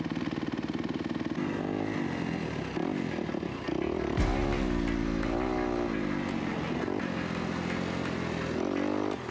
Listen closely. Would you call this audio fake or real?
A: real